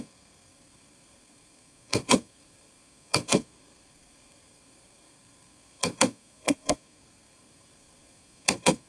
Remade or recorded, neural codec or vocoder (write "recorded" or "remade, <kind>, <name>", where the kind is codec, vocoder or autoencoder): remade, codec, SNAC